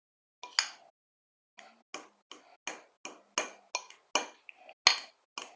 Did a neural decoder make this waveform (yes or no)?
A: no